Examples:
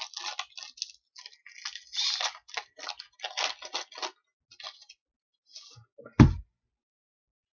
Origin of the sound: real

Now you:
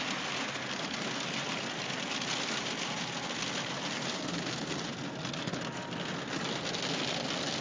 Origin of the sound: real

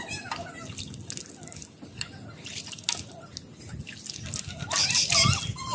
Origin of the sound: real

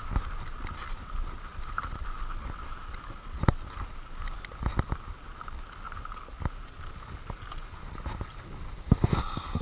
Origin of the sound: real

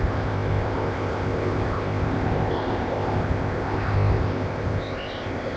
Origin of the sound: fake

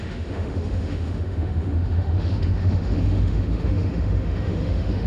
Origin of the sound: fake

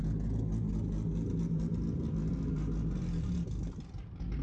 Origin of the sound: real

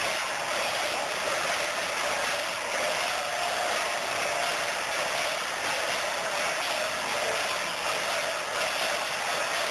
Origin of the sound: real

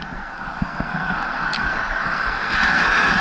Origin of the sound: fake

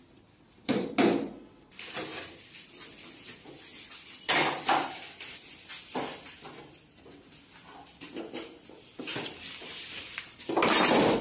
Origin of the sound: real